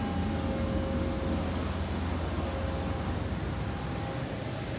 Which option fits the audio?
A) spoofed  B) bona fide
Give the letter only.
B